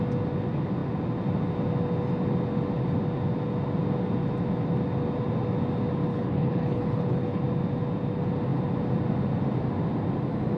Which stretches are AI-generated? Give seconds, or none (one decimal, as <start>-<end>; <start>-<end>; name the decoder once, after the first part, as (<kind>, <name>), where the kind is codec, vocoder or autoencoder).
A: 6.1-7.4 (codec, HILCodec)